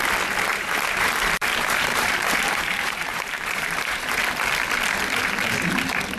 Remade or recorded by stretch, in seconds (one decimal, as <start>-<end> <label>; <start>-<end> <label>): 0.0-0.5 recorded; 0.5-4.2 remade; 4.2-6.2 recorded

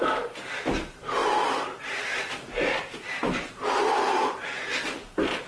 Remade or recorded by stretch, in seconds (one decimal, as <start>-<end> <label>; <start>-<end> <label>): 0.0-1.2 recorded; 1.2-4.5 remade; 4.5-5.5 recorded

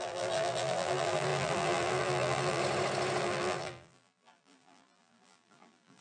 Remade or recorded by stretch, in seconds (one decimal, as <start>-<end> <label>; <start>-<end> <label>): 0.0-2.6 remade; 2.6-3.2 recorded; 3.2-6.0 remade